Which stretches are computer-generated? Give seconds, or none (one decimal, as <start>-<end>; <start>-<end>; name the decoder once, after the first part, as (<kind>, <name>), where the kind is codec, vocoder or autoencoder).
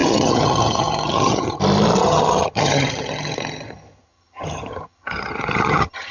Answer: 0.0-1.6 (vocoder, HiFi-GAN); 2.0-6.1